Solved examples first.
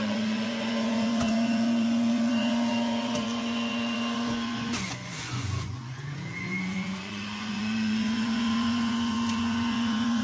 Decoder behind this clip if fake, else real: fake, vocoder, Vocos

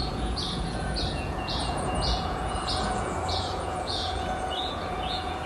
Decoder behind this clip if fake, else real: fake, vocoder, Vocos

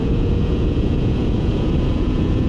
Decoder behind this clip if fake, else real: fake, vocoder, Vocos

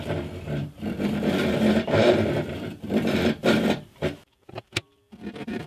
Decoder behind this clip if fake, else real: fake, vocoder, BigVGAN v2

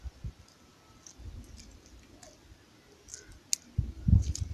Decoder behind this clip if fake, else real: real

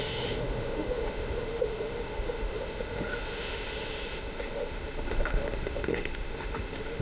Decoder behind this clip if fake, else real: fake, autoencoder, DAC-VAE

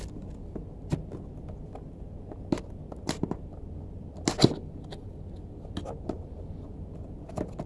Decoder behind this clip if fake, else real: real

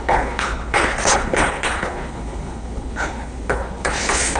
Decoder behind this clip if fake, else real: fake, codec, HILCodec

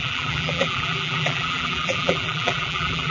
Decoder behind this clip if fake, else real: fake, vocoder, BigVGAN v2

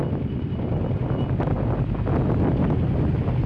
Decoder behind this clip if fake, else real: real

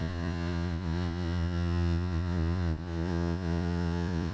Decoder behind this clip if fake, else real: fake, vocoder, Vocos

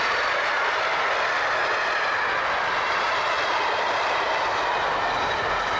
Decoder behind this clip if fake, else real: real